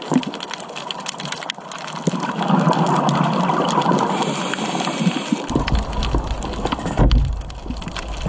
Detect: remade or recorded recorded